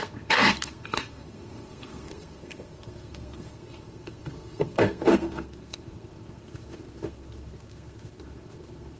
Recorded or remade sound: remade